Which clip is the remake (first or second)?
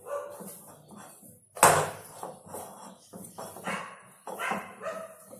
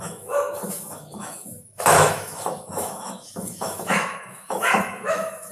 second